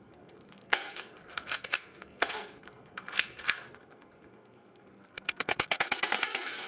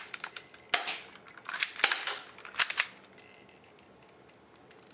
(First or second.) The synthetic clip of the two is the first